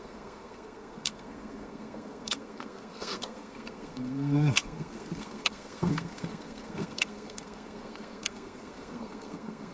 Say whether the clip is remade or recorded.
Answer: remade